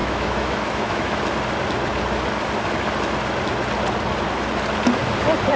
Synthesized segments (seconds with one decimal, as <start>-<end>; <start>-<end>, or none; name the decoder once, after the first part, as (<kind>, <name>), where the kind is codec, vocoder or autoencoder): 0.0-1.2 (autoencoder, DAC-VAE)